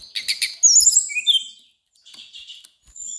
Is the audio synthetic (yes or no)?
no